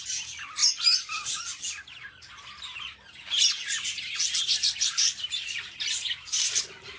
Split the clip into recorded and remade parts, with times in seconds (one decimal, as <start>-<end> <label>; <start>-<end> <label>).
0.0-0.6 remade; 0.6-4.4 recorded; 4.4-7.0 remade